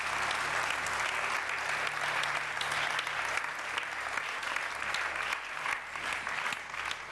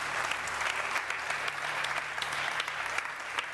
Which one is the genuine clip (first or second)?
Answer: first